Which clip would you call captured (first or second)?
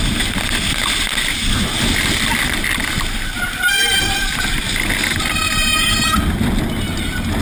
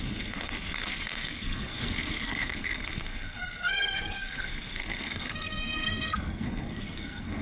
first